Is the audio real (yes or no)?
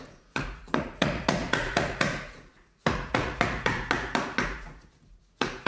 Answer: no